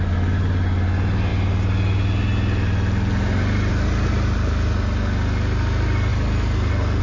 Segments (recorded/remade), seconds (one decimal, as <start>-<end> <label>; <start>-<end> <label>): 0.0-7.0 recorded